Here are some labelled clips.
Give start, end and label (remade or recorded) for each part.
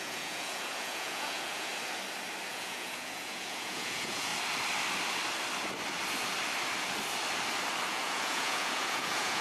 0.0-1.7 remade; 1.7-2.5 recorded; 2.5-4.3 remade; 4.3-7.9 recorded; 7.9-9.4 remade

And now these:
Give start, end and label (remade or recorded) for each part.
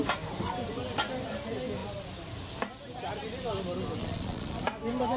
0.0-4.0 recorded; 4.0-4.6 remade; 4.6-5.2 recorded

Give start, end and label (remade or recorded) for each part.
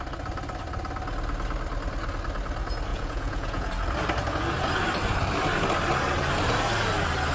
0.0-2.9 recorded; 2.9-3.7 remade; 3.7-7.3 recorded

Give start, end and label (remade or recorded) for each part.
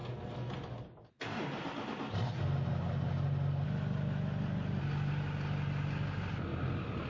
0.0-7.1 recorded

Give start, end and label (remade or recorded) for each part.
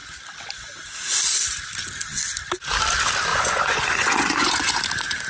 0.0-3.3 recorded; 3.3-4.8 remade; 4.8-5.3 recorded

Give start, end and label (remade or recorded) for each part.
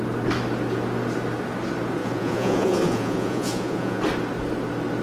0.0-2.0 recorded; 2.0-4.0 remade; 4.0-5.0 recorded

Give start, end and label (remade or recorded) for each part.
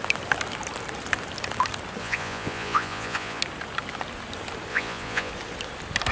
0.0-2.0 recorded; 2.0-3.4 remade; 3.4-4.7 recorded; 4.7-5.3 remade; 5.3-6.1 recorded